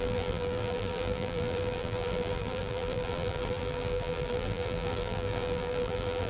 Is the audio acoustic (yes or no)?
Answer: no